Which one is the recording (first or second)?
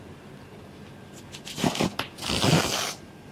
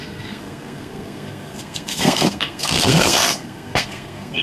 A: first